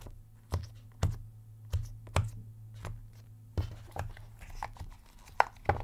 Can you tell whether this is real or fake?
real